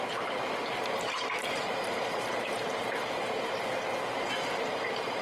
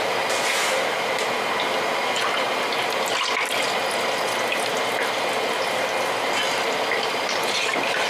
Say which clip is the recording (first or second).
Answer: second